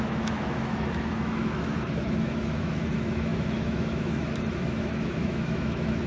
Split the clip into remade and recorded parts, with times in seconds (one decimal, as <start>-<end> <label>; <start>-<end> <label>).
0.0-6.1 remade